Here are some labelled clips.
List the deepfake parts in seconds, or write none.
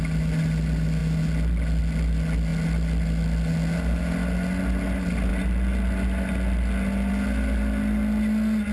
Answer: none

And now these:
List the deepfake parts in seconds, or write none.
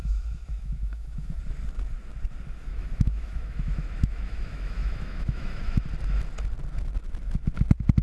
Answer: 0.0-1.4 (autoencoder, DAC-VAE); 2.7-5.7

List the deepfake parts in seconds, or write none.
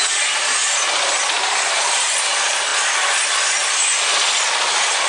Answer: none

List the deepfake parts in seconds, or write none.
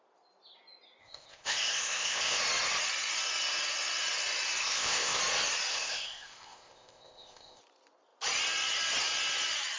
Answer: 1.0-2.4 (codec, ZipCodec); 4.6-5.2; 5.7-7.6